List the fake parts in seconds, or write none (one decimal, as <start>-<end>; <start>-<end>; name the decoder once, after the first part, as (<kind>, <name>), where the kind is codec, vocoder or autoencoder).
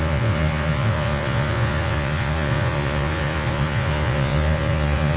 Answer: 0.0-5.2 (vocoder, Vocos)